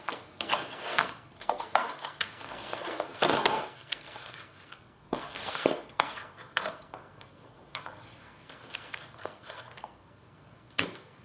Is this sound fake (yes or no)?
yes